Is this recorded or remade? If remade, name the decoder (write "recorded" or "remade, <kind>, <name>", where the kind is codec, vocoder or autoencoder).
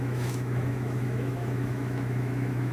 remade, autoencoder, DAC-VAE